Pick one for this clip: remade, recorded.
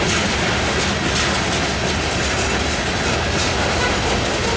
recorded